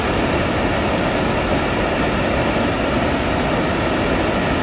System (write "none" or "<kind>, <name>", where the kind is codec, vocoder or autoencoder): none